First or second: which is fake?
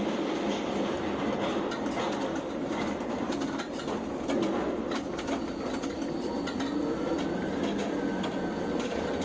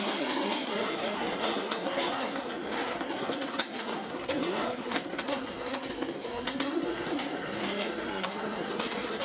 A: second